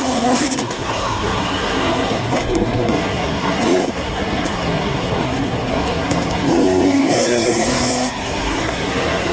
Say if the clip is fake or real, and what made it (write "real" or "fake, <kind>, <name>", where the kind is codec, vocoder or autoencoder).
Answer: fake, codec, SNAC